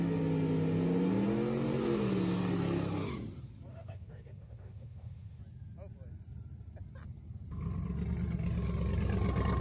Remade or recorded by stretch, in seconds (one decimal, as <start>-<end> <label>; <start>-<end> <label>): 0.0-3.7 recorded; 3.7-5.4 remade; 5.4-9.6 recorded